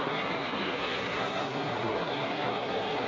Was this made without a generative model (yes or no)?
no